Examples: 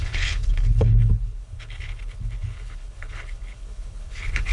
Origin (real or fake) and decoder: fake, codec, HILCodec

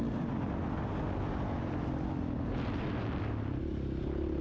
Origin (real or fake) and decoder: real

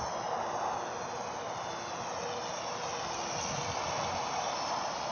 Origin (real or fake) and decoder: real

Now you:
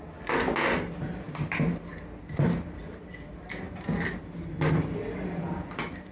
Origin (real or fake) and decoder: real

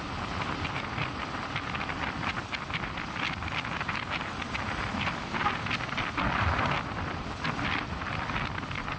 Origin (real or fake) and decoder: real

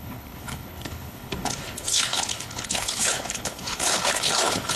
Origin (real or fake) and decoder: fake, codec, HILCodec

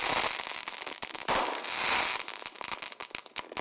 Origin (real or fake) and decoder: real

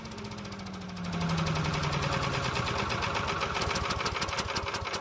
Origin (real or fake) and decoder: real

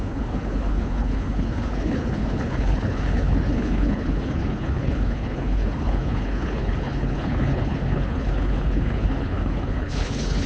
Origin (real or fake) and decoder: fake, codec, HILCodec